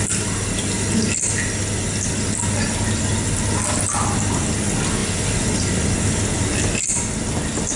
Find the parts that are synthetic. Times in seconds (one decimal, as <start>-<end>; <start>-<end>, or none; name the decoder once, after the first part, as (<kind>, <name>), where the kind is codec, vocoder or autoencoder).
none